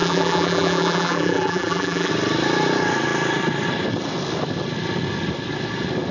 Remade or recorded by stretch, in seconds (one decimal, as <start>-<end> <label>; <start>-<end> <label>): 0.0-2.1 remade; 2.1-6.1 recorded